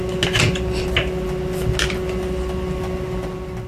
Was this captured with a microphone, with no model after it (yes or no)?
yes